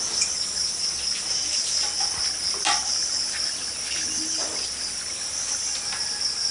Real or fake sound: real